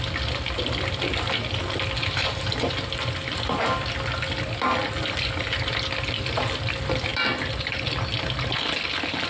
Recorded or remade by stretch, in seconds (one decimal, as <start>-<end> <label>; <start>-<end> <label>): 0.0-9.3 recorded